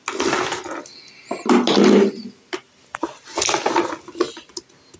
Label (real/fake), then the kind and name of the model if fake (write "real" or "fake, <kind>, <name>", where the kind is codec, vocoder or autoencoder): real